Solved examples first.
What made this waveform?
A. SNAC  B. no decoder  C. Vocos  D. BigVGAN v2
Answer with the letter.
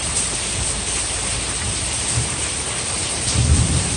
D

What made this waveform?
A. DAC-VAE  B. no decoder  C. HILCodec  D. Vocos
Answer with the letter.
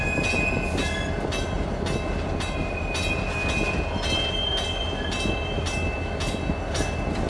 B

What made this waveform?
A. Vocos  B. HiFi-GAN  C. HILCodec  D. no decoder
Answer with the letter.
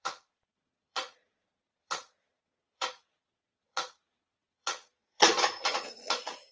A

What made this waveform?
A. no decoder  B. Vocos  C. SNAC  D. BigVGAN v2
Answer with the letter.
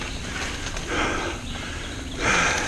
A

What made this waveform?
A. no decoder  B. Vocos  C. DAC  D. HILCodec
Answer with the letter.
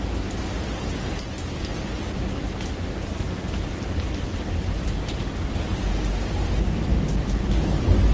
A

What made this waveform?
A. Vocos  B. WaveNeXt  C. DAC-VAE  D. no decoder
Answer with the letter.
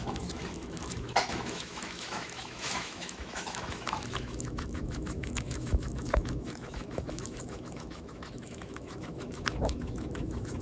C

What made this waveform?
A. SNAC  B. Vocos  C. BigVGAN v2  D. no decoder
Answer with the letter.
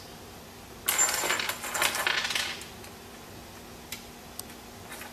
D